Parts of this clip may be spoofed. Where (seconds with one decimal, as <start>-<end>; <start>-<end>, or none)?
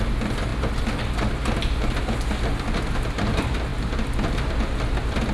3.7-4.5